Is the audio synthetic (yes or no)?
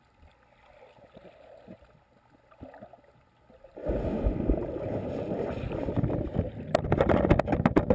no